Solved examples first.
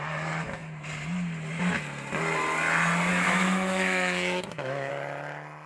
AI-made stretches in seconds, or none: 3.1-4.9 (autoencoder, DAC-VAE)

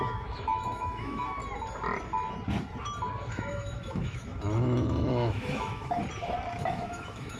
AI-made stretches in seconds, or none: 0.0-1.4 (autoencoder, DAC-VAE); 3.3-6.0; 6.6-7.4

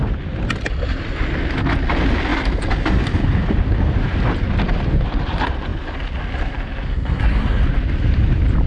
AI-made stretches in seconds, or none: 6.9-7.6 (codec, SNAC)